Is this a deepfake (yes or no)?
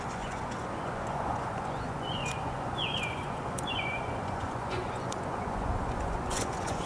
yes